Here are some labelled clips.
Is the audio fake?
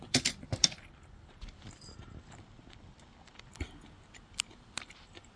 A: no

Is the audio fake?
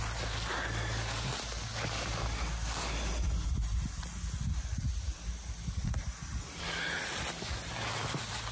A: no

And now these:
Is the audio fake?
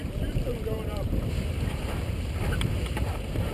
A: yes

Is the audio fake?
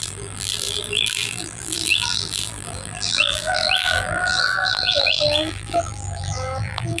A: yes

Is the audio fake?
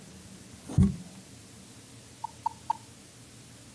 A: no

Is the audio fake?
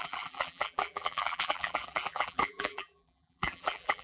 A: yes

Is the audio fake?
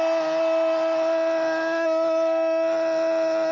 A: no